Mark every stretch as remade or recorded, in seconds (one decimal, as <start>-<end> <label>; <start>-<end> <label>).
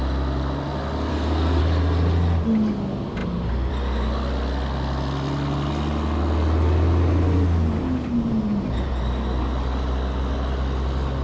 0.0-1.1 recorded; 1.1-1.6 remade; 1.6-11.2 recorded